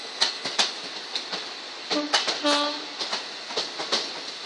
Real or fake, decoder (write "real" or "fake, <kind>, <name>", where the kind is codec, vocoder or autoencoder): real